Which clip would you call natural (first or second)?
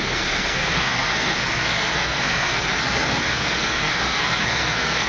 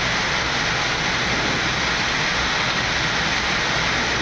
second